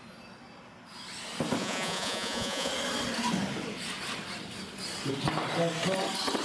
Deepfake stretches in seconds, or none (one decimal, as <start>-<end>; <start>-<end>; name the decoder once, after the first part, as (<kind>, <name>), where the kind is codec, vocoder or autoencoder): 1.6-2.7 (vocoder, Vocos)